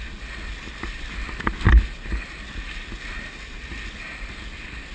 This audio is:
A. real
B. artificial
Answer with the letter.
A